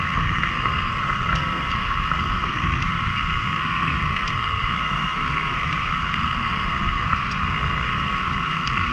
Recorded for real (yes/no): no